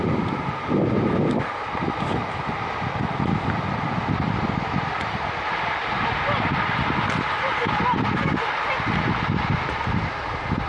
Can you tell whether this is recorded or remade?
recorded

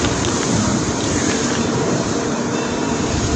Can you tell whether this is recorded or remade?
remade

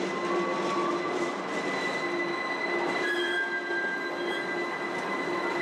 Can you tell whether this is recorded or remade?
recorded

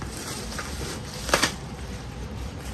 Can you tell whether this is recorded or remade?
remade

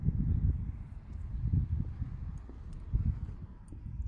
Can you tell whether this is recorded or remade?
recorded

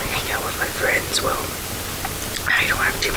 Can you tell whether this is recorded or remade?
recorded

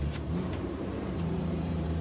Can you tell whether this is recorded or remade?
remade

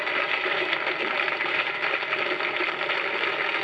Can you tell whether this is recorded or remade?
recorded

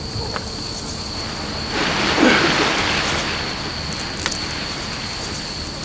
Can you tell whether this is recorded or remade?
recorded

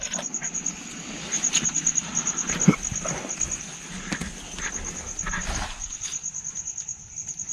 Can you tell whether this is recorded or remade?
recorded